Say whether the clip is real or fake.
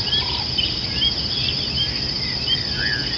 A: real